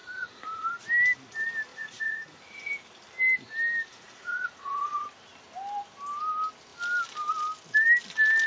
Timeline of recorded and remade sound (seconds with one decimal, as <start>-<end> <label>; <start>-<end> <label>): 0.0-0.8 remade; 0.8-1.7 recorded; 1.7-2.4 remade; 2.4-3.9 recorded; 3.9-5.0 remade; 5.0-8.5 recorded